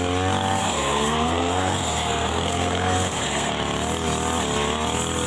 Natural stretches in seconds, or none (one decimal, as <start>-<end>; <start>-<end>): 0.0-0.6; 3.5-5.3